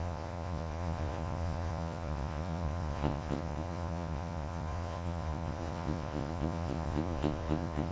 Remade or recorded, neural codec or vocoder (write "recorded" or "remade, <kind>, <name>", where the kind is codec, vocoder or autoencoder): remade, vocoder, Vocos